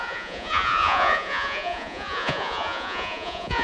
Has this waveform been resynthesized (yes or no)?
yes